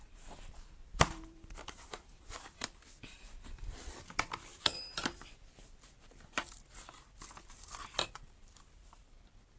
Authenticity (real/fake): fake